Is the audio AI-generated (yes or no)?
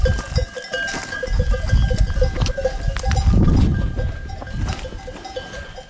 no